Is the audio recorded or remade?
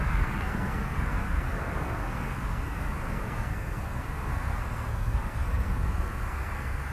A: remade